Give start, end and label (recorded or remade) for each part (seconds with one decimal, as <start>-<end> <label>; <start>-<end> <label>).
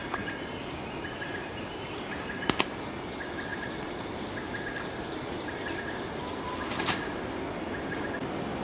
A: 0.0-3.5 recorded; 3.5-7.7 remade; 7.7-8.6 recorded